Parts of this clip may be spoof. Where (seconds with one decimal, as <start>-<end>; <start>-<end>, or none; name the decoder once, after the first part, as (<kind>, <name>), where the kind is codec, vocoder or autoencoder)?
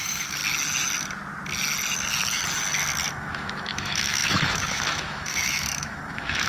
0.0-0.4 (autoencoder, DAC-VAE); 3.1-6.5